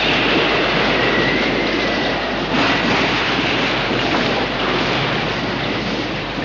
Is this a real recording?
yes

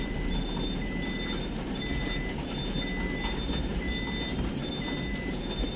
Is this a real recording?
yes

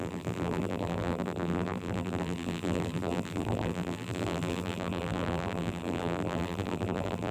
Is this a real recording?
no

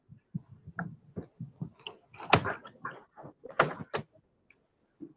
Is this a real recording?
yes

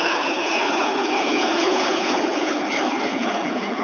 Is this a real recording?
no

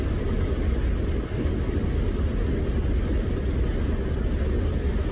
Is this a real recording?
yes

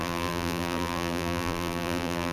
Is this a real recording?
no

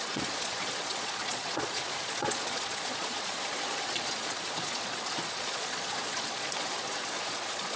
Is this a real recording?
no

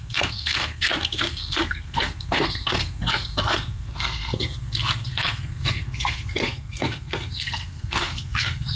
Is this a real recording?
no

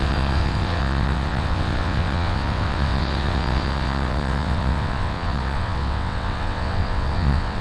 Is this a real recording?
no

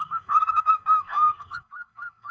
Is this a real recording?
no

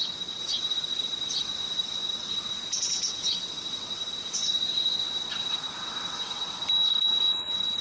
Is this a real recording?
no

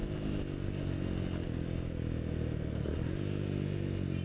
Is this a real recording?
yes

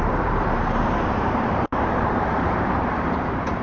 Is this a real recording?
no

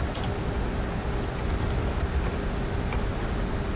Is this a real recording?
yes